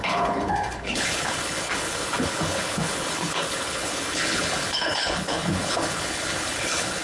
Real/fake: fake